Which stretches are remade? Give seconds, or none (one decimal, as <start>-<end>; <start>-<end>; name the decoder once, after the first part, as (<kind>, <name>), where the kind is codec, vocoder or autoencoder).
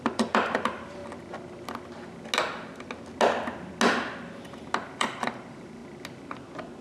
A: 0.0-1.0 (vocoder, BigVGAN v2); 4.9-5.8